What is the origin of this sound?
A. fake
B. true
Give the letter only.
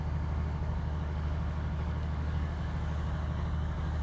A